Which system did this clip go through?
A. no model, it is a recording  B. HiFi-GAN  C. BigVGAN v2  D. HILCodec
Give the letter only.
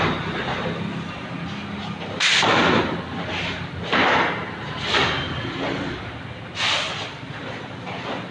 A